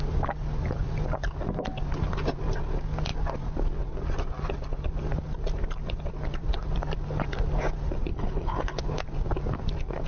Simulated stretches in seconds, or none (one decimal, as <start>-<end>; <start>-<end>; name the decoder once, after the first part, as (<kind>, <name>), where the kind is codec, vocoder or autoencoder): 8.1-8.8 (codec, HILCodec)